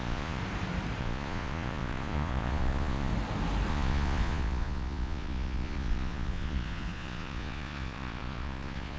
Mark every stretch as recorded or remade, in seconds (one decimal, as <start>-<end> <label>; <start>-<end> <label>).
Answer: 0.0-0.4 remade; 0.4-1.0 recorded; 1.0-3.1 remade; 3.1-3.7 recorded; 3.7-9.0 remade